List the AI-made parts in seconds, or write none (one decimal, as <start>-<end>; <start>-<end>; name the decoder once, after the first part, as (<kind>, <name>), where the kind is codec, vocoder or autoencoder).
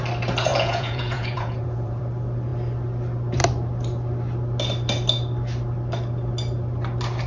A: 0.5-2.0 (vocoder, Vocos)